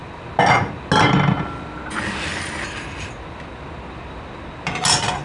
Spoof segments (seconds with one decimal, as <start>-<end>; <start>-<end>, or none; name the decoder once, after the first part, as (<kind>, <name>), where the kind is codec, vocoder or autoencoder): none